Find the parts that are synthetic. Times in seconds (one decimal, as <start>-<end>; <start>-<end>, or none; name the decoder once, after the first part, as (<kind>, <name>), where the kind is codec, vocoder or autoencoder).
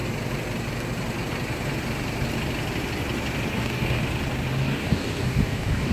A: 3.5-4.0 (codec, DAC); 4.6-5.9